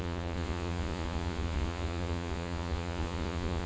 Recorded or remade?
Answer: remade